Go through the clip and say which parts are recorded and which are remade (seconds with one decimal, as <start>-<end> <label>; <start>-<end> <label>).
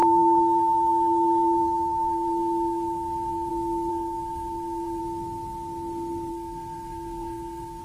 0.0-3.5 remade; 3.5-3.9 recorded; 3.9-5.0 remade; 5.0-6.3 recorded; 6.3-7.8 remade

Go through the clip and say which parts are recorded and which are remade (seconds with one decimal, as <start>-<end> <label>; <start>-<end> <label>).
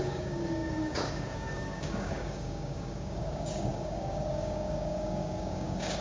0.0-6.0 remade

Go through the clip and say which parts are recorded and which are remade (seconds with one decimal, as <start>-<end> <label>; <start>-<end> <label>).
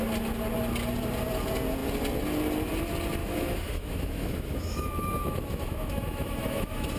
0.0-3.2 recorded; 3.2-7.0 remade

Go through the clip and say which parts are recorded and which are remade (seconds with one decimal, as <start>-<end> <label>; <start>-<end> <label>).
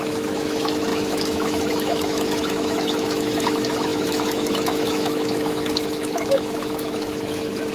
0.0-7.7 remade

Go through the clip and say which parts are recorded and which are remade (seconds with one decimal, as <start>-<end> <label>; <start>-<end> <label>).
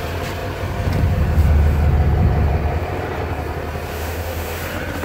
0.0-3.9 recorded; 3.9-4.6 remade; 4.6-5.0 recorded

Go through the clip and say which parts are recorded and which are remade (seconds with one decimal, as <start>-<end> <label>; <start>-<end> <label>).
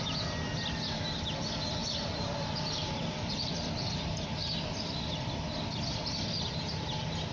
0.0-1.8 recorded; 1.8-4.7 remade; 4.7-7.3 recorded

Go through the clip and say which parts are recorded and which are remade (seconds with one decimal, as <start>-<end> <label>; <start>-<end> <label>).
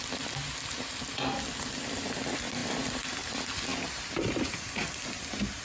0.0-5.6 recorded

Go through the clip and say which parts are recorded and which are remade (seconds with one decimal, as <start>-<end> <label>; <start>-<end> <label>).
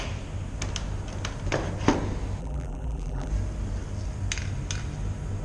0.0-2.4 recorded; 2.4-3.3 remade; 3.3-5.4 recorded